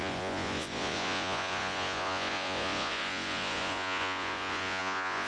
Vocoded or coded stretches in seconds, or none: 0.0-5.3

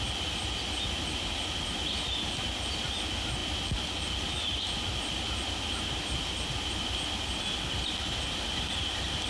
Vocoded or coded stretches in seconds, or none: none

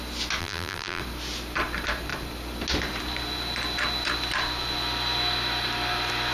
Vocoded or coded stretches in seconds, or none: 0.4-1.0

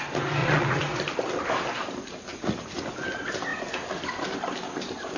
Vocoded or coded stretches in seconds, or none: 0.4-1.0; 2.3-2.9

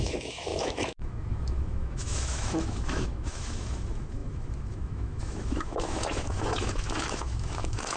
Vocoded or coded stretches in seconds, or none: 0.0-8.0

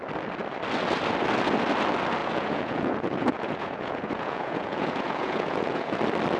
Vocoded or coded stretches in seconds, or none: 2.2-6.0